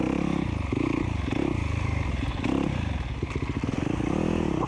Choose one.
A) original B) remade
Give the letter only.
A